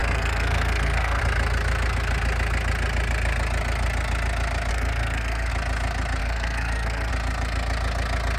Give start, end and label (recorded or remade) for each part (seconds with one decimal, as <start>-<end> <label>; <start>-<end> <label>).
0.0-1.2 remade; 1.2-4.7 recorded; 4.7-5.5 remade; 5.5-6.2 recorded; 6.2-7.1 remade; 7.1-8.4 recorded

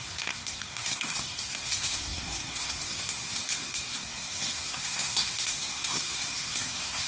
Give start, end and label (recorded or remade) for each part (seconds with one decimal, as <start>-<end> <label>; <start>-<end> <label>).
0.0-7.1 remade

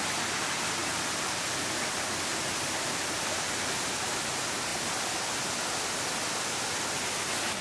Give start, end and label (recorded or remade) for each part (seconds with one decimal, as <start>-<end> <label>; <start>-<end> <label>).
0.0-7.6 recorded

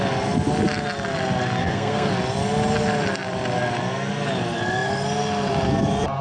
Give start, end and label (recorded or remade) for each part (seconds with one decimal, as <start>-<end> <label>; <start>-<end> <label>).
0.0-1.6 recorded; 1.6-2.1 remade; 2.1-6.2 recorded

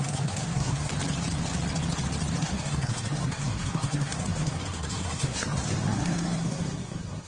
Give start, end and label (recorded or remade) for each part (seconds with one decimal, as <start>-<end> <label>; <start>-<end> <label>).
0.0-0.9 remade; 0.9-2.4 recorded; 2.4-7.3 remade